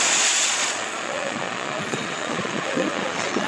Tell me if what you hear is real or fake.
fake